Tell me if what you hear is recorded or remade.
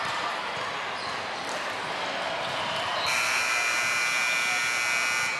recorded